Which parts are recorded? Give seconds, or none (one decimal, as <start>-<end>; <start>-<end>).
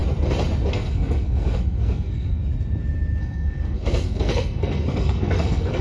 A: 0.0-0.7; 2.4-3.2